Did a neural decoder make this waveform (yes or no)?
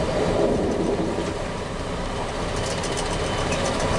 yes